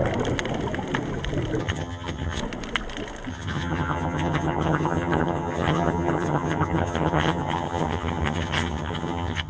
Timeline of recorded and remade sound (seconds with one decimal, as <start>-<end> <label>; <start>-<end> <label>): 0.0-1.6 recorded; 1.6-2.4 remade; 2.4-3.3 recorded; 3.3-9.5 remade